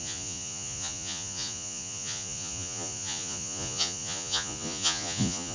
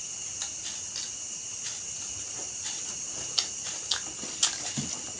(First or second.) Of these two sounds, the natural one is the second